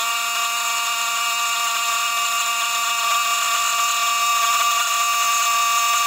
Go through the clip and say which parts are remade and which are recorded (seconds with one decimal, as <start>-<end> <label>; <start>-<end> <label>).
0.0-3.1 remade; 3.1-4.3 recorded; 4.3-4.9 remade; 4.9-6.1 recorded